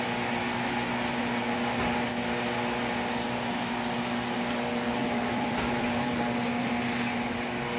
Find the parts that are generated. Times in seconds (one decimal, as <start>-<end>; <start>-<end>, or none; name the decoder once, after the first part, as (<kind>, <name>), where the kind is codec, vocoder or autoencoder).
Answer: 5.0-6.7 (vocoder, BigVGAN v2)